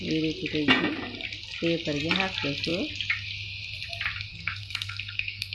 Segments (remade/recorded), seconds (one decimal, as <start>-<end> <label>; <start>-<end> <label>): 0.0-4.3 recorded; 4.3-5.5 remade